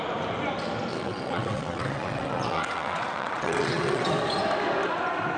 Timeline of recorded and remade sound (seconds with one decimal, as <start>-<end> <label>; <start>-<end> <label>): 0.0-0.9 recorded; 0.9-4.1 remade; 4.1-5.4 recorded

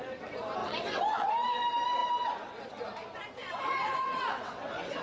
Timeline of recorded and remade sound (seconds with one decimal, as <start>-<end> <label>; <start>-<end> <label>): 0.0-0.6 recorded; 0.6-1.3 remade; 1.3-3.4 recorded; 3.4-5.0 remade

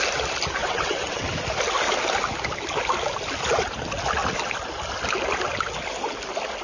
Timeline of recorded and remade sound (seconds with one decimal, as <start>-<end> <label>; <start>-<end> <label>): 0.0-0.6 recorded; 0.6-1.3 remade; 1.3-6.6 recorded

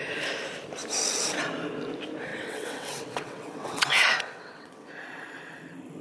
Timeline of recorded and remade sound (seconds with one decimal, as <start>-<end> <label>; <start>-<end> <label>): 0.0-2.3 recorded; 2.3-4.9 remade; 4.9-6.0 recorded

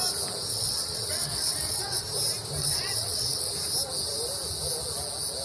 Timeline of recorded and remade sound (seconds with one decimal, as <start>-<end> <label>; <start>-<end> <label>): 0.0-0.5 recorded; 0.5-2.0 remade; 2.0-2.6 recorded; 2.6-3.5 remade; 3.5-5.4 recorded

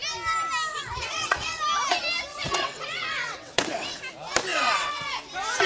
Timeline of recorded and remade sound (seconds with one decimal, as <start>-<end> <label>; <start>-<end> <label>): 0.0-0.7 recorded; 0.7-1.6 remade; 1.6-2.3 recorded; 2.3-4.0 remade; 4.0-4.5 recorded; 4.5-5.2 remade; 5.2-5.7 recorded

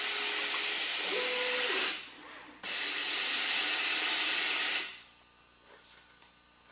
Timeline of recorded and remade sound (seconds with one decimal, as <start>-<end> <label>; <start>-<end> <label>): 0.0-6.7 recorded